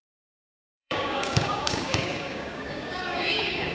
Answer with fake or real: fake